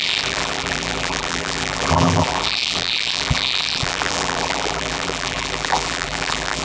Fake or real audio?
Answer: fake